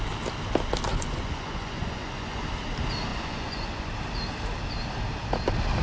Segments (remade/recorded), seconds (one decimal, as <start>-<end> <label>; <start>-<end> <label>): 0.0-0.9 recorded; 0.9-2.4 remade; 2.4-3.1 recorded; 3.1-3.9 remade; 3.9-5.8 recorded